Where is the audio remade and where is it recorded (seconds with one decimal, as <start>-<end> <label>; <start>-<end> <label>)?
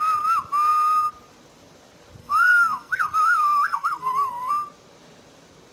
0.0-2.2 recorded; 2.2-4.5 remade; 4.5-5.7 recorded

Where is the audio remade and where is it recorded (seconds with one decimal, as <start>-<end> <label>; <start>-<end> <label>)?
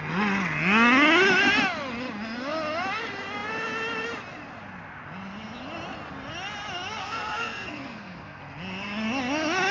0.0-7.0 recorded; 7.0-8.4 remade; 8.4-9.7 recorded